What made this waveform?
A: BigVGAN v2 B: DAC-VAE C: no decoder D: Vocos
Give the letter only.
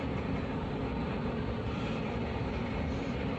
A